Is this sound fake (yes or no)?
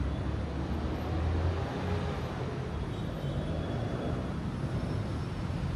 no